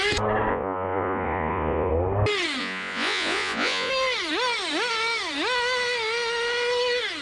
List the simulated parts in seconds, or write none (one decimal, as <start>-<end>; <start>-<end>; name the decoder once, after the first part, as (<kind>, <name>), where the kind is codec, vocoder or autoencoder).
0.5-1.9 (vocoder, Vocos); 2.6-3.9